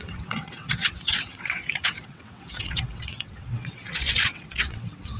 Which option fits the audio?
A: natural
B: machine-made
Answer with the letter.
B